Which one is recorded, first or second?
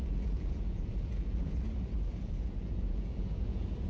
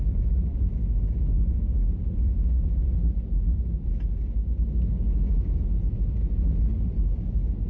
second